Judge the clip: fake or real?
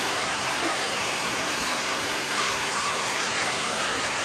fake